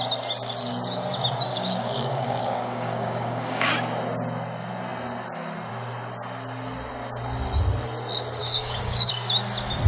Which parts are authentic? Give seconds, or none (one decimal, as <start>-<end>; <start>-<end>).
0.0-1.5; 3.7-8.4; 9.1-9.9

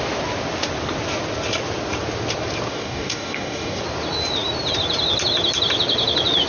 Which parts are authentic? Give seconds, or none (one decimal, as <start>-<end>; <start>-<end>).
0.0-2.7; 3.8-6.5

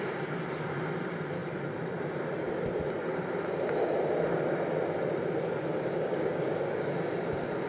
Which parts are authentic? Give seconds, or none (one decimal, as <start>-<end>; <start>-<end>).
0.0-5.7; 6.9-7.7

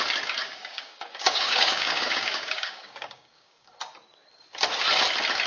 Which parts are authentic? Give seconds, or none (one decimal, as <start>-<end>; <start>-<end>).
0.0-0.4; 3.7-5.5

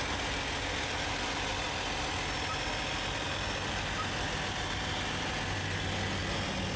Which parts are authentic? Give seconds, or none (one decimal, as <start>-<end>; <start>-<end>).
0.0-6.8

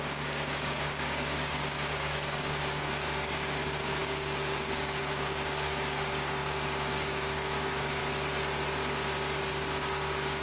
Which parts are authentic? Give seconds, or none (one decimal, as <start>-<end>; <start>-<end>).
8.0-9.5

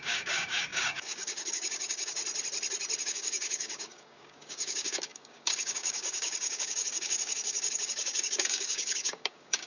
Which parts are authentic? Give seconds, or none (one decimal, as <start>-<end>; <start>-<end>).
2.2-3.0

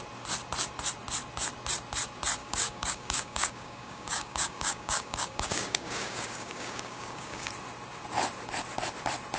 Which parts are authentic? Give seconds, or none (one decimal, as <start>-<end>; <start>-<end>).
0.0-2.4; 7.5-9.4